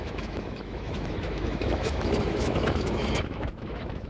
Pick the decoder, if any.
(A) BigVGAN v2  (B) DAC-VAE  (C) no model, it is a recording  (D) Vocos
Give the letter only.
B